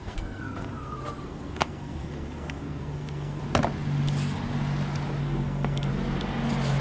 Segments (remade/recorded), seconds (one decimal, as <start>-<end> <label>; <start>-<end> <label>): 0.0-3.4 remade; 3.4-5.2 recorded; 5.2-5.9 remade; 5.9-6.8 recorded